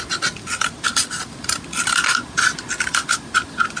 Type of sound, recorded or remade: recorded